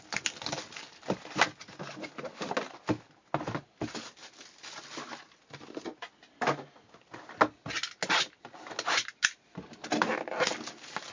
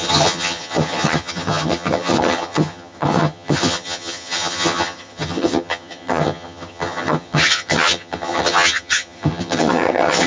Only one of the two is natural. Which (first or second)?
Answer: first